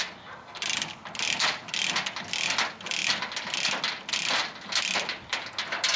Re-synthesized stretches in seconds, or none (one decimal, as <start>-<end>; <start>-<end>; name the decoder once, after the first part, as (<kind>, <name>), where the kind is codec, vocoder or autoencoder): none